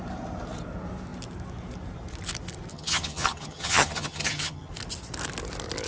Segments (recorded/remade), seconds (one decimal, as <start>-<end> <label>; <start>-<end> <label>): 0.0-2.7 recorded; 2.7-4.7 remade; 4.7-5.9 recorded